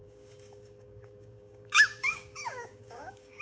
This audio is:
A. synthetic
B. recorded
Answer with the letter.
A